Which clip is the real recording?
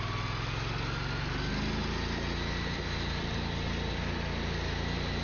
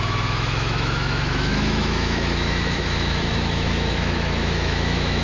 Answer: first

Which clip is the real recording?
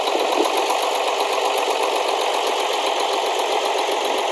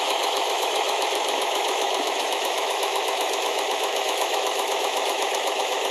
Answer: first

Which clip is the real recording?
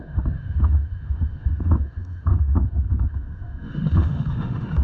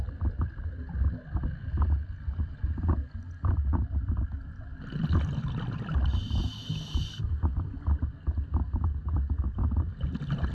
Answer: second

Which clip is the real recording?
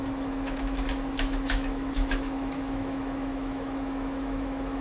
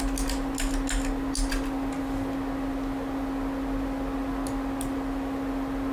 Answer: second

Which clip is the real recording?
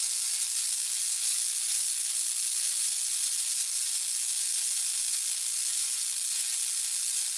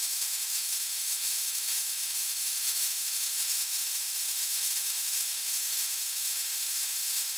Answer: first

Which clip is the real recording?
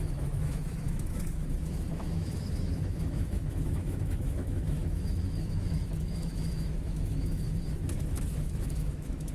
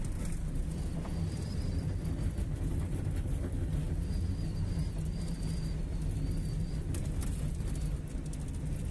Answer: second